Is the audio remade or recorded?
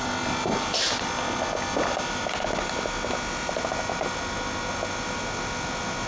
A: recorded